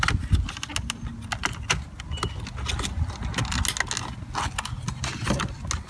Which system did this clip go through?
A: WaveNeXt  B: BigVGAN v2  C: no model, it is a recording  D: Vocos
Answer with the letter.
C